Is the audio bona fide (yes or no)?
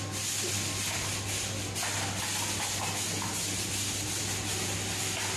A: yes